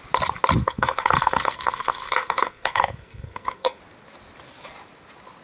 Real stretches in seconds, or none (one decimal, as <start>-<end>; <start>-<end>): 0.0-0.6; 3.8-5.4